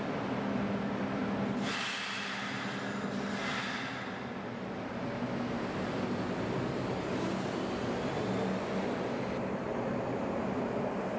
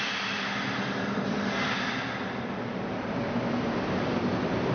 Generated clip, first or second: second